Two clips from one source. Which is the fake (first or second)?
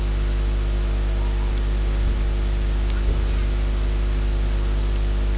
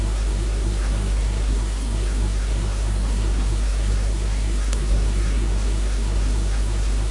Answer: second